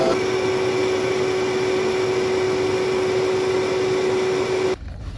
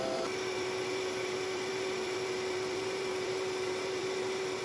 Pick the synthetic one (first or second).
second